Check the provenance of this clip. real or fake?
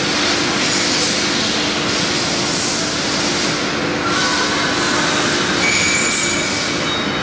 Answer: real